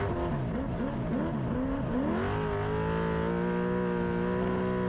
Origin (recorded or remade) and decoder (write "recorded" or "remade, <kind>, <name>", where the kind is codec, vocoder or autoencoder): recorded